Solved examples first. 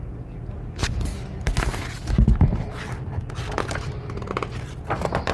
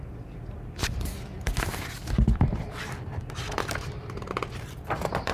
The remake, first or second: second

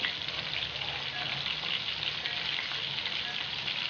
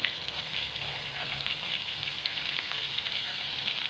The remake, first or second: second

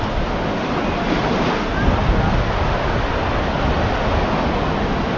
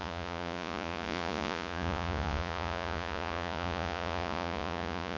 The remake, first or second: second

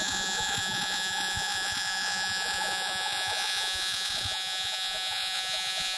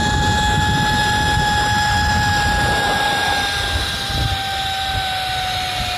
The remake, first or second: first